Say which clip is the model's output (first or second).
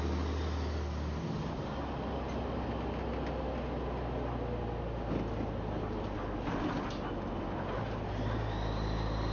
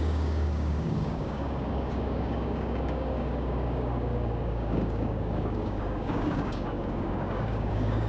second